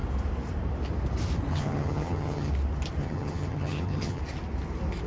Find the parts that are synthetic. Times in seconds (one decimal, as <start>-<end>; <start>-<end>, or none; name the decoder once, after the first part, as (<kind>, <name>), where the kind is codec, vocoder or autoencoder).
1.5-2.5 (vocoder, HiFi-GAN); 3.0-4.2